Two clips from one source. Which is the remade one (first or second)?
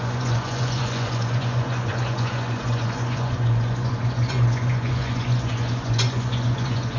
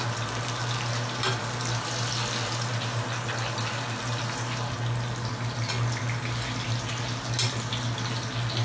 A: first